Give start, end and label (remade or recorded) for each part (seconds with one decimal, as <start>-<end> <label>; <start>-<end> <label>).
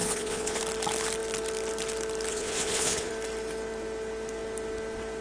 0.0-0.6 remade; 0.6-2.3 recorded; 2.3-3.1 remade; 3.1-5.2 recorded